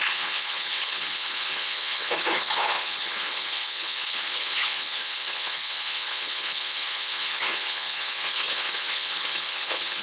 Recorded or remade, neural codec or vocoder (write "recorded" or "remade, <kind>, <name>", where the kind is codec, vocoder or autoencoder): remade, codec, HILCodec